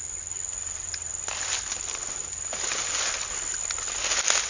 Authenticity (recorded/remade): recorded